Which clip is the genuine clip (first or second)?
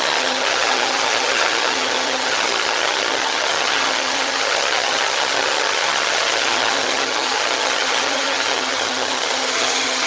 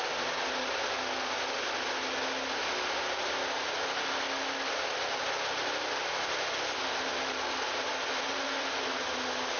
second